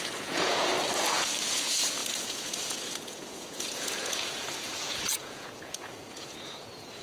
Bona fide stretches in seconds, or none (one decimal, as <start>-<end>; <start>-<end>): 0.7-1.4